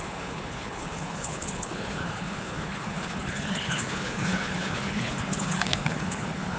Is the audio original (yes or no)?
no